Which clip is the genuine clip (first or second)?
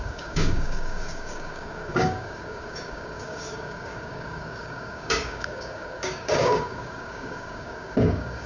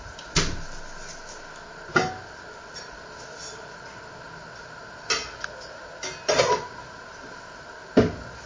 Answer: second